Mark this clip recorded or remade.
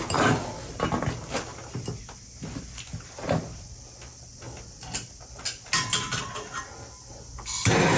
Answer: recorded